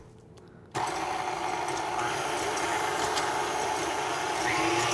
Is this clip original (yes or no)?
yes